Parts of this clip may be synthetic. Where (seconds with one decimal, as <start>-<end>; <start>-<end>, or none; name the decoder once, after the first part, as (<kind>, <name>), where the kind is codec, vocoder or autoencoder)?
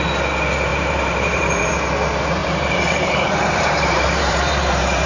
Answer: 0.7-1.7 (vocoder, BigVGAN v2); 2.4-5.1